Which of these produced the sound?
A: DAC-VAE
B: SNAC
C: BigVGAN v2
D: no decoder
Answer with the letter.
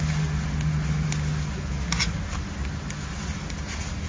D